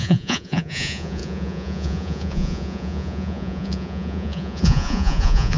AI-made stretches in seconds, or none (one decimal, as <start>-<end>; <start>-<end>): 0.0-5.6